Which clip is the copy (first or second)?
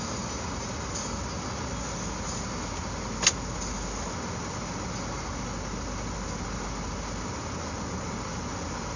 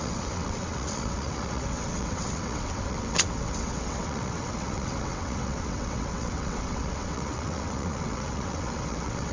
second